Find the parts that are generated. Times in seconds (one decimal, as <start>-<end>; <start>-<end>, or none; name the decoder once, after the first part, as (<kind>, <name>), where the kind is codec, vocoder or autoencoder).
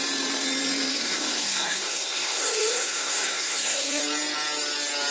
0.9-4.0 (codec, SNAC)